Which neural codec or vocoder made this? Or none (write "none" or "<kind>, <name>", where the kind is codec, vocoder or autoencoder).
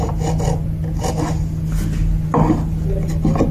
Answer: none